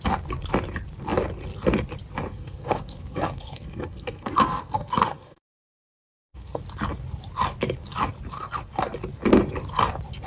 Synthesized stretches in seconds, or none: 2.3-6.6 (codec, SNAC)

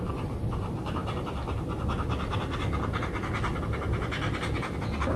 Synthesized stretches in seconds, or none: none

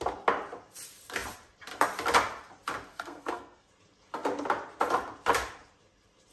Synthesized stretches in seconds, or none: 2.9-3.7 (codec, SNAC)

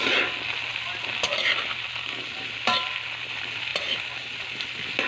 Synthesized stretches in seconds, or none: none

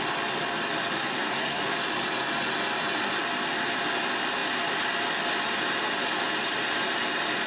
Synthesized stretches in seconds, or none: 1.1-1.6 (codec, SNAC)

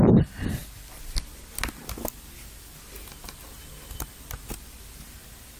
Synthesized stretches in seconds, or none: none

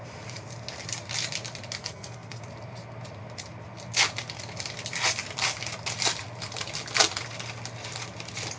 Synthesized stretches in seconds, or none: 1.8-2.4 (codec, SNAC)